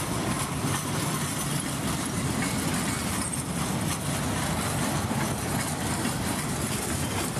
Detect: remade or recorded remade